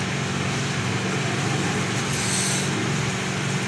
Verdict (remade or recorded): recorded